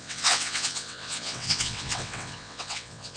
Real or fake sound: fake